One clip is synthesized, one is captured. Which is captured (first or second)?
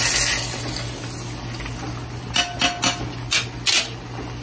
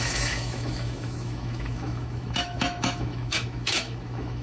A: first